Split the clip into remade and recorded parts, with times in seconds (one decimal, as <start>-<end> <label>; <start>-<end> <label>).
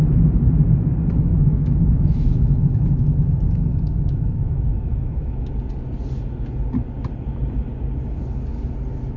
0.0-1.3 recorded; 1.3-5.5 remade; 5.5-9.2 recorded